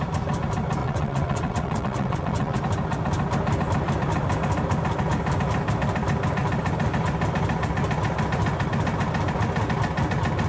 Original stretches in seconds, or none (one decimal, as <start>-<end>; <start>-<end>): 0.0-0.8; 2.6-10.5